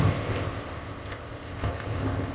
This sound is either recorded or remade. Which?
remade